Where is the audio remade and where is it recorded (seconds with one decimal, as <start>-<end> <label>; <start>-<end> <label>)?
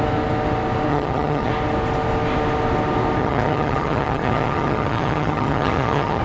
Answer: 0.0-0.9 recorded; 0.9-1.5 remade; 1.5-3.2 recorded; 3.2-6.2 remade